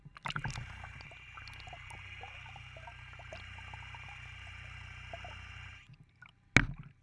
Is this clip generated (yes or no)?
no